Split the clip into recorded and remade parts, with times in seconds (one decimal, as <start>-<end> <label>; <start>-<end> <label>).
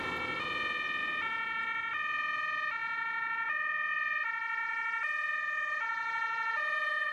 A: 0.0-1.0 recorded; 1.0-1.6 remade; 1.6-2.8 recorded; 2.8-3.9 remade; 3.9-4.6 recorded; 4.6-7.1 remade